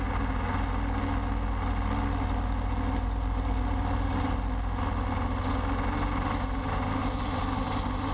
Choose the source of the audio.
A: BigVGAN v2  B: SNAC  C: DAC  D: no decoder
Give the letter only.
D